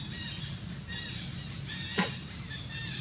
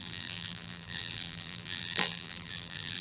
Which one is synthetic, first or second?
second